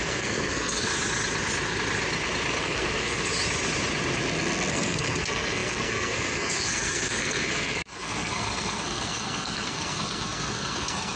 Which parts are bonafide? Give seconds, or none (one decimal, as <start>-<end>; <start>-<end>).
0.9-2.6; 3.3-4.7